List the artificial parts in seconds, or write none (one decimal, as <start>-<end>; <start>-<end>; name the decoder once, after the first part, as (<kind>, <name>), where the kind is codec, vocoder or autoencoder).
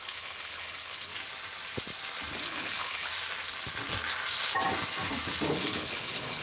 0.0-1.1 (codec, HILCodec); 2.4-3.1; 5.5-6.4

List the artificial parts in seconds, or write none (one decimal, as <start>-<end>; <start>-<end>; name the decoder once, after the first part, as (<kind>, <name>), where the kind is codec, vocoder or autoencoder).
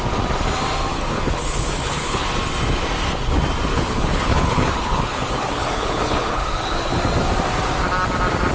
0.9-2.3 (codec, HILCodec); 3.7-7.0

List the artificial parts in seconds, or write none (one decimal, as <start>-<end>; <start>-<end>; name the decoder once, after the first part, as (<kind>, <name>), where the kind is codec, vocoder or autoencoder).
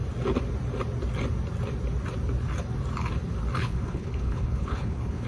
3.6-5.3 (codec, HILCodec)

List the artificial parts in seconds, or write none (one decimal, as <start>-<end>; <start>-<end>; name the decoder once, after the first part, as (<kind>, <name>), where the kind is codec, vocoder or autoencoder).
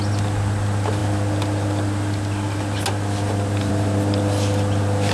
none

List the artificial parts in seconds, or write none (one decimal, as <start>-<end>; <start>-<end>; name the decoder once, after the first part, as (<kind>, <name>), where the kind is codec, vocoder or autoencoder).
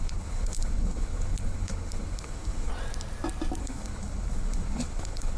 0.0-2.7 (codec, HILCodec); 3.6-5.4